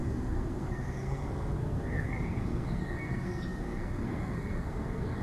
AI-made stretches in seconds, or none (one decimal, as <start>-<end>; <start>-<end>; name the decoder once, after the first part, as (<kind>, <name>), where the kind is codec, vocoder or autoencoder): 0.0-5.2 (codec, SNAC)